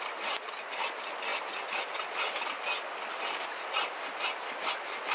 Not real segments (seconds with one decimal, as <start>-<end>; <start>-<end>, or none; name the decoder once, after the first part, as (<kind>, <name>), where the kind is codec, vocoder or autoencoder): none